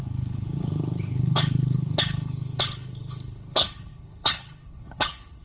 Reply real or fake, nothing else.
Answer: fake